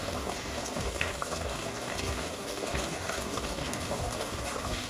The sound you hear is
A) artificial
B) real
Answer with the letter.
A